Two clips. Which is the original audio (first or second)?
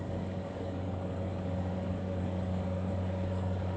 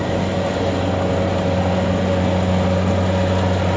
second